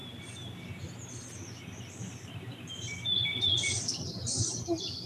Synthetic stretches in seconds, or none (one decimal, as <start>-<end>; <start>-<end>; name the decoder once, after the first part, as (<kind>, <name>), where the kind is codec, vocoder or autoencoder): none

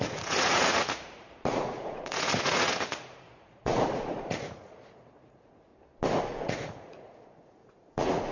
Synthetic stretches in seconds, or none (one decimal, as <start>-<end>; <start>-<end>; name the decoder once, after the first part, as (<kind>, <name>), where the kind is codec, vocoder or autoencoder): 0.0-5.7 (vocoder, Vocos); 6.2-8.3

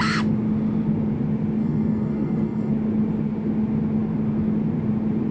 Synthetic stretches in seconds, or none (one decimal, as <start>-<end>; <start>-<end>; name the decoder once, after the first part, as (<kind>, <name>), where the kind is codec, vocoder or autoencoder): 1.6-2.7 (codec, SNAC)